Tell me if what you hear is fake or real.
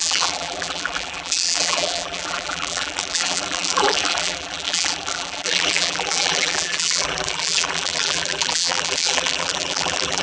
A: fake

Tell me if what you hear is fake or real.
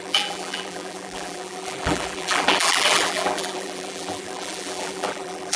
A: fake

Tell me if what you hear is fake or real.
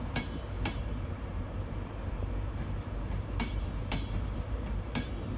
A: fake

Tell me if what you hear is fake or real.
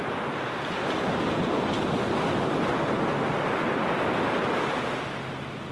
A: real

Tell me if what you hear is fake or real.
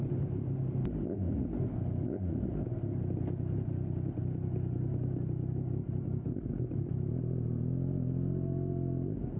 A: real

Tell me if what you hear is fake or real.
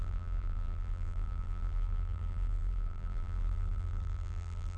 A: fake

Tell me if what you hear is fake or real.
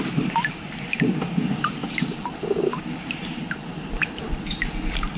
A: fake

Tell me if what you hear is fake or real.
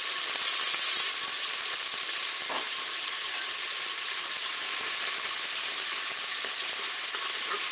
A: fake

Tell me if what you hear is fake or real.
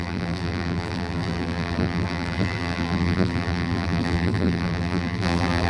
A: fake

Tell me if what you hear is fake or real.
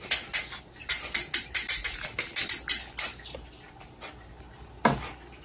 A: real